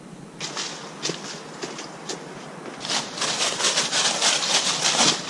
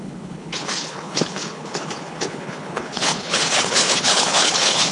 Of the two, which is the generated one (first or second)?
second